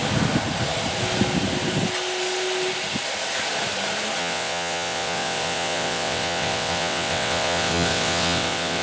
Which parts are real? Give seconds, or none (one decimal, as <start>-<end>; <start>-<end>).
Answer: 0.0-4.2

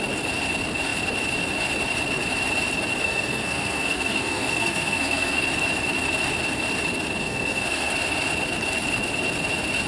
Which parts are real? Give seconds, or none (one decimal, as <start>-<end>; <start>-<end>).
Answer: 0.0-3.0; 5.4-7.2; 7.9-9.9